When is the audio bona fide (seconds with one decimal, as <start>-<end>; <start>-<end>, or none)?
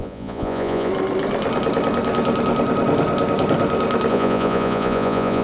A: 0.9-4.1